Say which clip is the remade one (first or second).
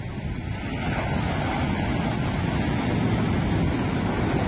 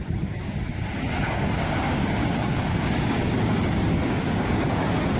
second